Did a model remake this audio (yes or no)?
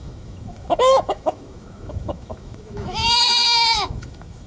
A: yes